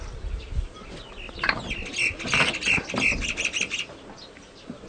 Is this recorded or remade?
recorded